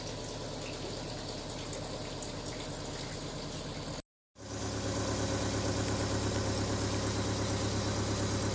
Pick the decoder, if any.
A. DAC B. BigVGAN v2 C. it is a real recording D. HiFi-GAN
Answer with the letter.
C